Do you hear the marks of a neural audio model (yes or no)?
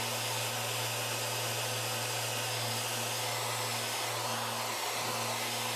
no